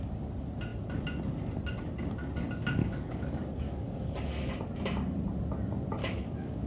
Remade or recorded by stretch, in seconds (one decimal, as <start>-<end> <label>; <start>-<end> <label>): 0.0-2.8 recorded; 2.8-4.5 remade; 4.5-6.0 recorded; 6.0-6.7 remade